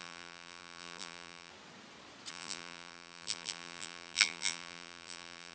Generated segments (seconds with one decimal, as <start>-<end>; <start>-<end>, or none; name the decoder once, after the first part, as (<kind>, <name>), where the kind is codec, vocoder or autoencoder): 0.0-1.5 (vocoder, BigVGAN v2); 2.3-5.5

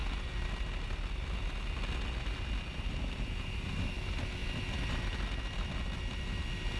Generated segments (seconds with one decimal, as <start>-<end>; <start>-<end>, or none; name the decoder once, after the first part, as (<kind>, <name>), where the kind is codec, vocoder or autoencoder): none

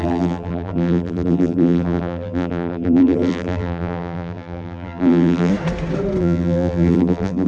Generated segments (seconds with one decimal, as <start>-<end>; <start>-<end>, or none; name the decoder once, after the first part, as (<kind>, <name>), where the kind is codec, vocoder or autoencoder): 0.0-5.5 (vocoder, BigVGAN v2); 6.2-7.5

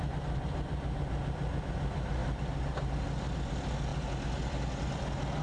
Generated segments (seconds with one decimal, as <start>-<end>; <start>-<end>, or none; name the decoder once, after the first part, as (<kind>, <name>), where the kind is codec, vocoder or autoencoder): none

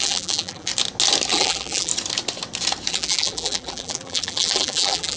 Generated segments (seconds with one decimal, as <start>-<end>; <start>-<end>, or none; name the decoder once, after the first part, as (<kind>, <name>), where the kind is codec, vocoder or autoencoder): 0.0-0.7 (vocoder, BigVGAN v2); 1.3-1.9; 2.9-5.2

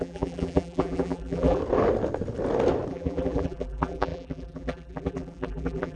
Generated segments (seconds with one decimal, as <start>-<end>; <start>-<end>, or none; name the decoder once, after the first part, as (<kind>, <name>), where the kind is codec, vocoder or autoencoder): 0.0-1.6 (vocoder, BigVGAN v2); 2.9-6.0